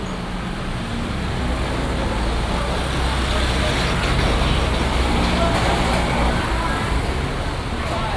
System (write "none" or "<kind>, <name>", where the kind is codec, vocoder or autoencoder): none